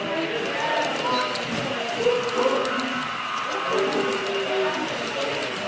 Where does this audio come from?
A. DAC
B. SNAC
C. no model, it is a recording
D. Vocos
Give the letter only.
C